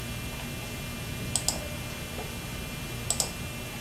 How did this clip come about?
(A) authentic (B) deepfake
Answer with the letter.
A